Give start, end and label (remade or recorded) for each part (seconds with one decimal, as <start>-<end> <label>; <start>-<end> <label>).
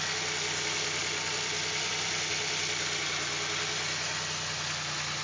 0.0-1.0 recorded; 1.0-2.5 remade; 2.5-5.2 recorded